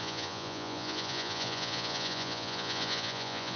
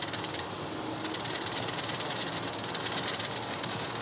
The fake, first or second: first